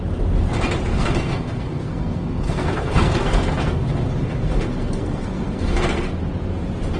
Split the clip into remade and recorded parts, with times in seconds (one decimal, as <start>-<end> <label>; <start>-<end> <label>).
0.0-0.9 recorded; 0.9-3.8 remade; 3.8-4.2 recorded; 4.2-6.1 remade; 6.1-7.0 recorded